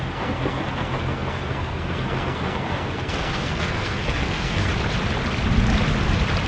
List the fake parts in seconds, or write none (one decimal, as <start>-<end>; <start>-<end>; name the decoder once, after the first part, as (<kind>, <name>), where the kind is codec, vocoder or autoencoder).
0.0-4.7 (codec, SNAC)